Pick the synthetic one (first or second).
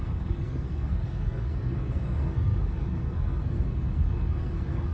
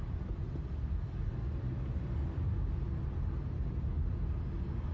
first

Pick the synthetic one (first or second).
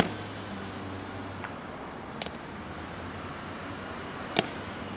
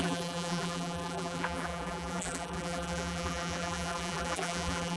second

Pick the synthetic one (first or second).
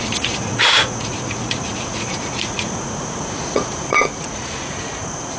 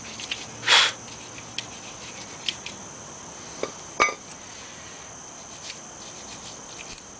first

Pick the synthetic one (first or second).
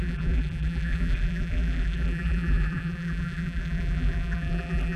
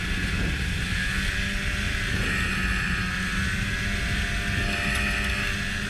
first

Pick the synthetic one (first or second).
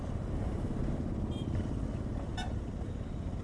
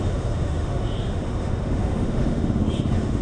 second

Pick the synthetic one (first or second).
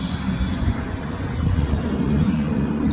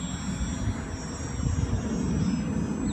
first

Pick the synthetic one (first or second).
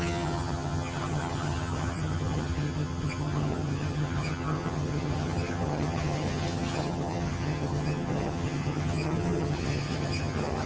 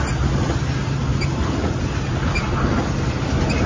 first